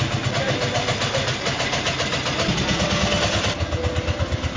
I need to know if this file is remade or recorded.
recorded